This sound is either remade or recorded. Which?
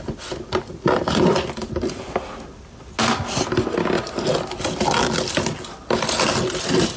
recorded